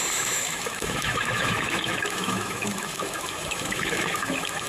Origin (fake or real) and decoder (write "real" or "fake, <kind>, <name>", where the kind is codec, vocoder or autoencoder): fake, autoencoder, DAC-VAE